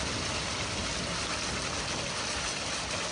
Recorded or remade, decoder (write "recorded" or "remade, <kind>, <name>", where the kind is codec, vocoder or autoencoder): recorded